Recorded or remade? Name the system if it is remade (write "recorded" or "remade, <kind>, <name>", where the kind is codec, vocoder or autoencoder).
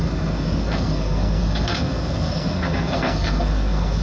remade, codec, SNAC